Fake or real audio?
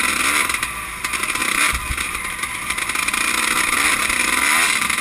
fake